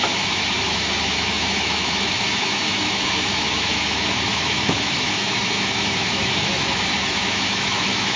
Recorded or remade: remade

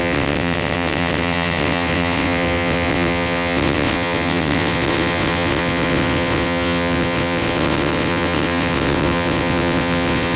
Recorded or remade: remade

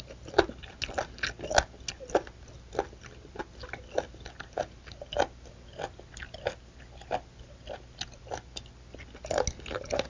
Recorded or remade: recorded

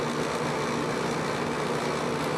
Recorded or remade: recorded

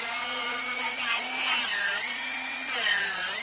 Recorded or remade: remade